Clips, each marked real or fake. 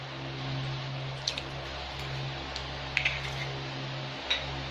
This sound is real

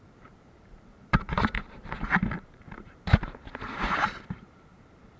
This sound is fake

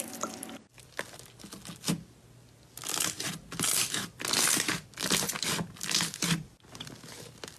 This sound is real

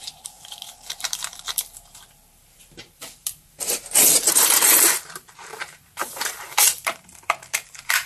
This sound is fake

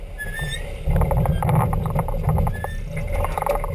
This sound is real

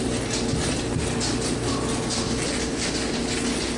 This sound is real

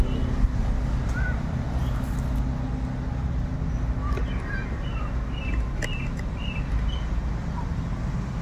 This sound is real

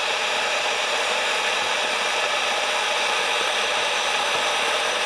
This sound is fake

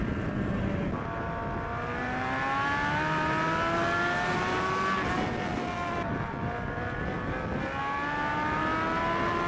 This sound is real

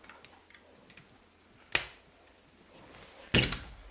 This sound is real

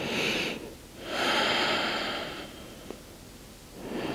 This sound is real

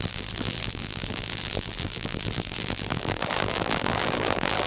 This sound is fake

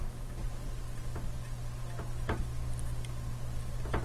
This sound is real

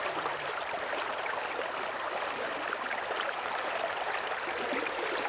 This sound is fake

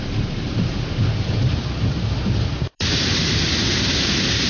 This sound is fake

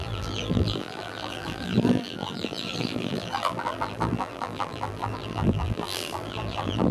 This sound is fake